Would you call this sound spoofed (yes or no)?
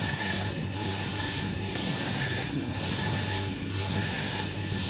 yes